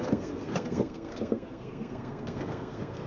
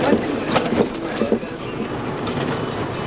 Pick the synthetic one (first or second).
first